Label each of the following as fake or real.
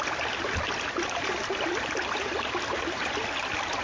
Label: fake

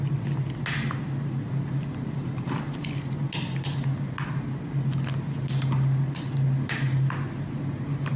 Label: real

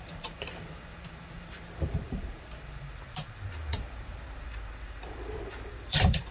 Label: fake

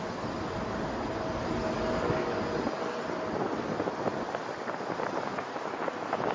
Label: real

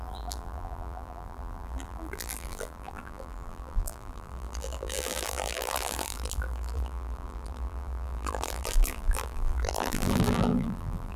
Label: fake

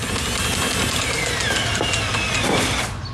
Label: real